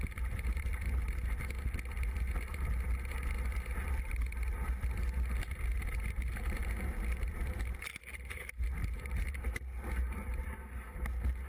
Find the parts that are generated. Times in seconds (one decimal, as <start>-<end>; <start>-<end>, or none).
0.0-1.0; 5.8-11.5